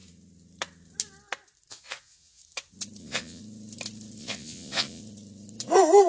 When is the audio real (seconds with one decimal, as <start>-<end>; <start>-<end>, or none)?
0.0-1.7; 2.4-3.0; 3.4-4.2; 5.0-6.1